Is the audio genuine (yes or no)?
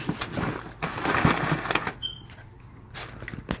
yes